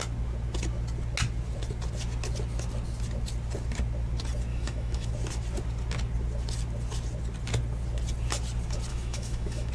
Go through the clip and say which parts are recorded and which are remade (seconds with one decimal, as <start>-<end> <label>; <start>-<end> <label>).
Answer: 0.0-4.5 recorded; 4.5-5.1 remade; 5.1-8.9 recorded; 8.9-9.7 remade